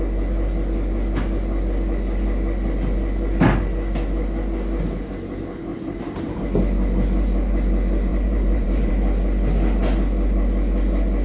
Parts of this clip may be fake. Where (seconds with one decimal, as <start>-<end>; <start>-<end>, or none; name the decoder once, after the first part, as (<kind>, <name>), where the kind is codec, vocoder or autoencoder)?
5.7-6.4 (vocoder, BigVGAN v2); 8.1-8.9